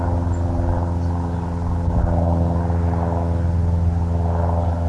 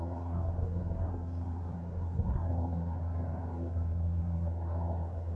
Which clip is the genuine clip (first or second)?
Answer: first